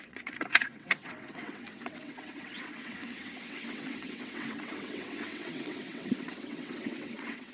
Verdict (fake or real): fake